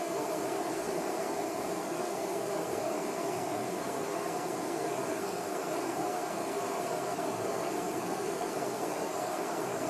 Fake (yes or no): yes